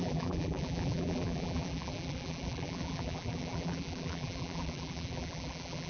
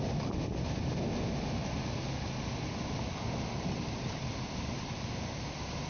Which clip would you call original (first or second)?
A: second